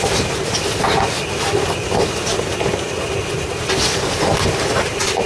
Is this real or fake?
real